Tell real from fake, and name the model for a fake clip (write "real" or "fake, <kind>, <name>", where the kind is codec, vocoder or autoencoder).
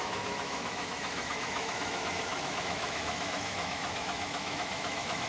fake, autoencoder, DAC-VAE